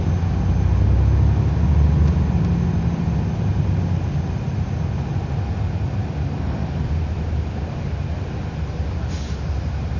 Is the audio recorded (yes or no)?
yes